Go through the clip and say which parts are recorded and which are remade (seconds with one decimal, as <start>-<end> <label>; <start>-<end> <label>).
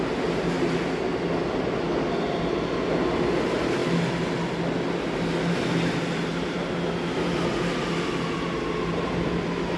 0.0-9.8 recorded